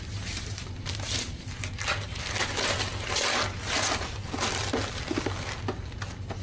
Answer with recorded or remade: recorded